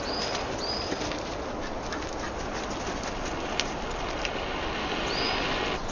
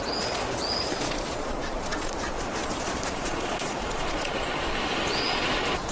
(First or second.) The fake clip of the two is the second